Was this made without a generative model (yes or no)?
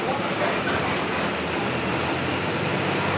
yes